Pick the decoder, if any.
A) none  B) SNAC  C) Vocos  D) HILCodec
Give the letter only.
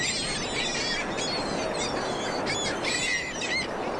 A